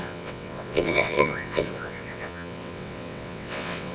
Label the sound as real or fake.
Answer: fake